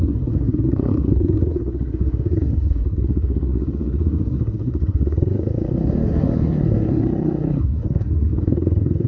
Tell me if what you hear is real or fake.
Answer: fake